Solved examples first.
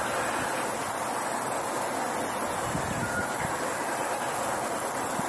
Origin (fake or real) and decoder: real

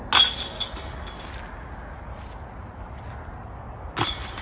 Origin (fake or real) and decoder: real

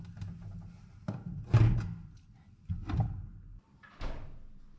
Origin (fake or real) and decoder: real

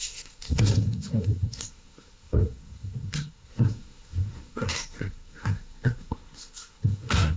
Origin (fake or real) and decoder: fake, codec, SNAC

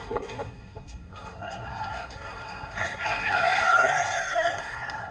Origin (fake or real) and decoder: fake, codec, SNAC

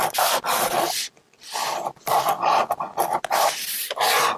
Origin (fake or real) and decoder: real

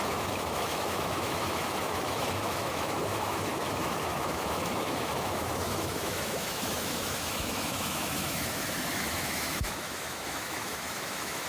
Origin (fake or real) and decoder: fake, autoencoder, DAC-VAE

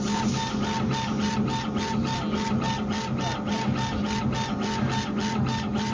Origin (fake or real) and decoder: real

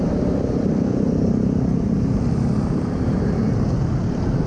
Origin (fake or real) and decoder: fake, vocoder, BigVGAN v2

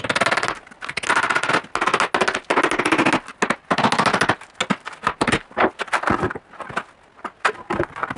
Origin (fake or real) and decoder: real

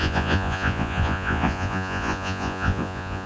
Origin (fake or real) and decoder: fake, vocoder, Vocos